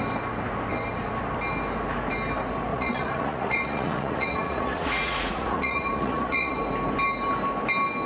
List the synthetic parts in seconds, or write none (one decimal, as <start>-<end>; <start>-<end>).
2.7-6.6